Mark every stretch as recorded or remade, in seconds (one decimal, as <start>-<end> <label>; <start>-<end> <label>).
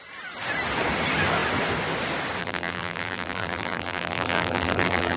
0.0-2.4 recorded; 2.4-5.2 remade